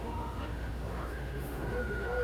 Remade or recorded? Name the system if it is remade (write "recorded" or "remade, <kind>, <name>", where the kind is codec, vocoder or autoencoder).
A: remade, autoencoder, DAC-VAE